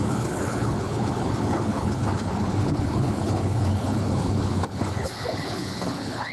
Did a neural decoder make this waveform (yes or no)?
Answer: yes